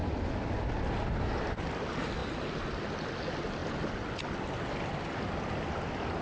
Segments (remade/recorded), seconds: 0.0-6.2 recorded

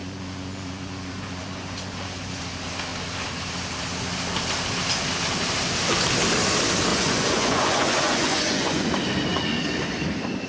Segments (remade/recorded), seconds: 0.0-2.4 remade; 2.4-6.9 recorded; 6.9-8.9 remade; 8.9-10.5 recorded

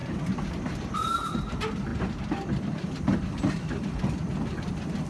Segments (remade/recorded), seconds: 0.0-5.1 recorded

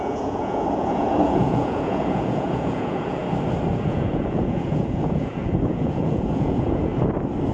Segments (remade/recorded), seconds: 0.0-3.2 remade; 3.2-3.7 recorded; 3.7-6.9 remade; 6.9-7.5 recorded

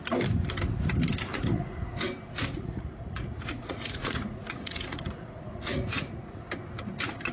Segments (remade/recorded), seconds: 0.0-1.3 recorded; 1.3-1.9 remade; 1.9-2.5 recorded; 2.5-6.4 remade; 6.4-7.3 recorded

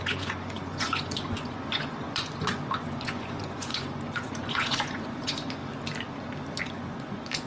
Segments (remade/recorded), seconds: 0.0-5.6 remade; 5.6-6.6 recorded; 6.6-7.5 remade